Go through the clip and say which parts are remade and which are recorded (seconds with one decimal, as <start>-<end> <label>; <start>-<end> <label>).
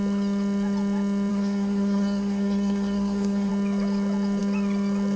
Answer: 0.0-1.3 recorded; 1.3-3.5 remade; 3.5-5.2 recorded